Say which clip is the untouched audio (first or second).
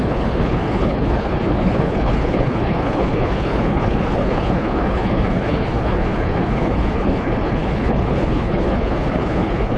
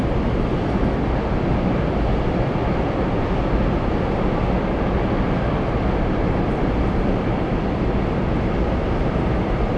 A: second